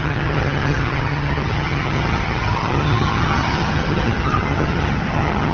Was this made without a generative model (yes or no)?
no